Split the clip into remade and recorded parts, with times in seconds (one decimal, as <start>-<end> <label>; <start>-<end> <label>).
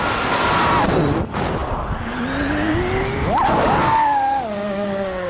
0.0-3.1 recorded; 3.1-5.3 remade